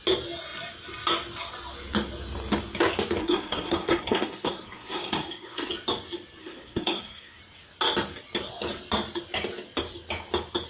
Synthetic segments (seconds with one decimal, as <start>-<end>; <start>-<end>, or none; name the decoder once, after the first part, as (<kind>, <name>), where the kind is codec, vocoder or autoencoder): 3.2-5.7 (codec, SNAC); 6.4-7.4